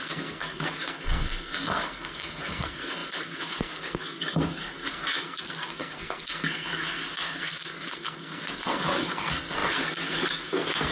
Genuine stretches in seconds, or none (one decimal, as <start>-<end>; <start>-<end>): none